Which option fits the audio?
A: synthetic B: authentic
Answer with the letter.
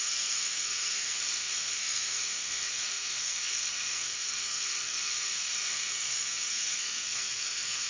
A